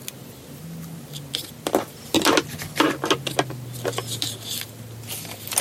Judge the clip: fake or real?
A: real